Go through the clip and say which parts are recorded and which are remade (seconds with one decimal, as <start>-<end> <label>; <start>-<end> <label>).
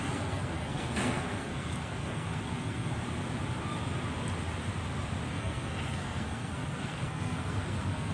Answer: 0.0-2.9 remade; 2.9-5.3 recorded; 5.3-8.1 remade